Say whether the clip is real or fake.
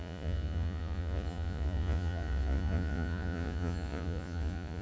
fake